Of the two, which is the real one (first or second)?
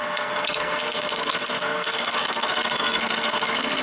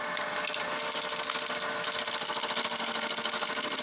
second